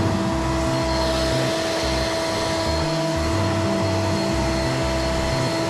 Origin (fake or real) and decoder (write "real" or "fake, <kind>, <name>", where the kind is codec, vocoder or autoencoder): real